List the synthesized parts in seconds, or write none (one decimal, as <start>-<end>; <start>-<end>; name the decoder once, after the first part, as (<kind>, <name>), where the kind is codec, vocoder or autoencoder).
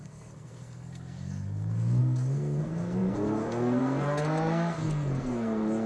0.0-5.9 (codec, SNAC)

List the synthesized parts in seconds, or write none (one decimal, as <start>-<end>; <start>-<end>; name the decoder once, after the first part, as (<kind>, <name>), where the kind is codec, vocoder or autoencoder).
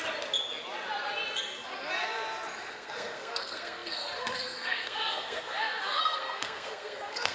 2.7-7.3 (codec, SNAC)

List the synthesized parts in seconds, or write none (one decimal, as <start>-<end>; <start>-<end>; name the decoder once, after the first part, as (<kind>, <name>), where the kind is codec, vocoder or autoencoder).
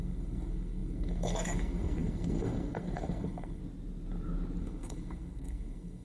0.0-3.6 (codec, SNAC); 4.6-6.0